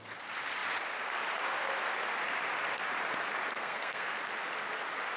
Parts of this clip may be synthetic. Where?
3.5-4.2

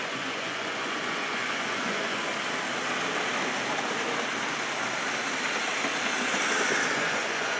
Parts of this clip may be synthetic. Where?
0.0-2.3; 6.9-7.6

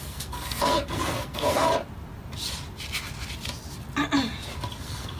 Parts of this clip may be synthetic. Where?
0.0-1.7; 4.8-5.2

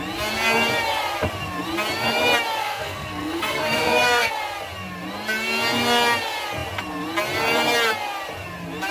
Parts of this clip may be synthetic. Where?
2.6-4.3

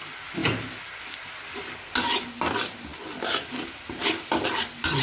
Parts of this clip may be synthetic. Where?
0.0-0.4; 2.5-2.9; 3.5-5.0